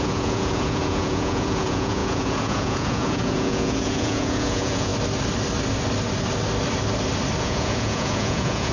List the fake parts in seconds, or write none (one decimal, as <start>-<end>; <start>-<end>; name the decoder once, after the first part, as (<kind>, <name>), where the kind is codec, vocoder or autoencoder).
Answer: 0.0-4.9 (vocoder, Vocos); 7.4-8.7